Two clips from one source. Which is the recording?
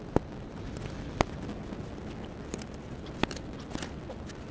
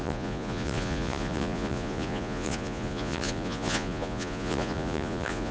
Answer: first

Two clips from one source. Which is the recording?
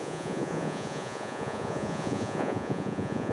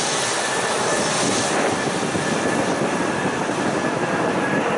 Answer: second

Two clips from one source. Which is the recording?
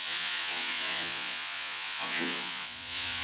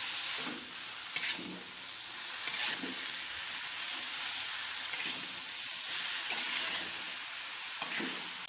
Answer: second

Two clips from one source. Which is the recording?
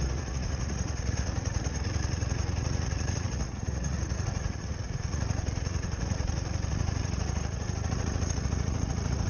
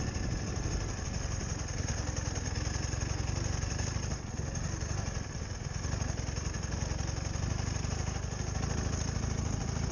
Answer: second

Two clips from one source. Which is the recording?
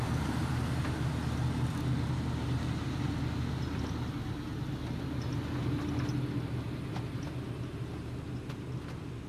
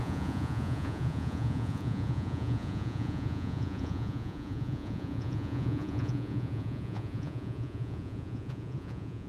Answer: first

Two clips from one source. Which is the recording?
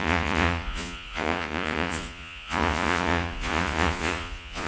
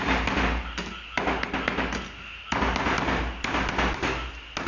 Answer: second